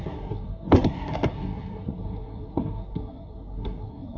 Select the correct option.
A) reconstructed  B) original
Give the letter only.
A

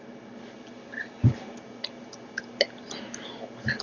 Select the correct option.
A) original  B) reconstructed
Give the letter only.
A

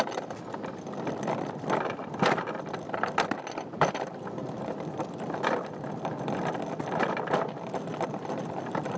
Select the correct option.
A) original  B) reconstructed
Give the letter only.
B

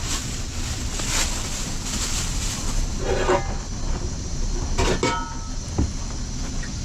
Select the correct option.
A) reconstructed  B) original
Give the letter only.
B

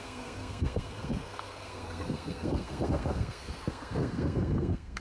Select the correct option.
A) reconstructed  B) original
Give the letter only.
A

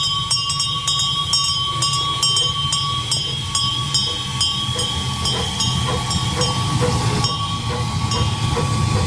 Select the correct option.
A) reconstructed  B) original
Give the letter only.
B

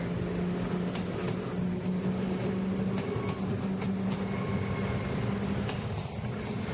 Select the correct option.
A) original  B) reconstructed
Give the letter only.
A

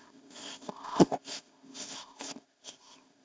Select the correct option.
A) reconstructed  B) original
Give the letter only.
A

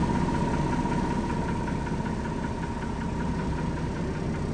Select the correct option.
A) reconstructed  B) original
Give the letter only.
B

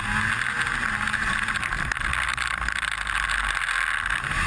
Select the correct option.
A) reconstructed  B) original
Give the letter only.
B